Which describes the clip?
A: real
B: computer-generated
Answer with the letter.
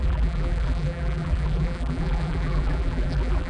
B